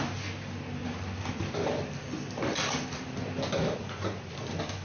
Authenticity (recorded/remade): recorded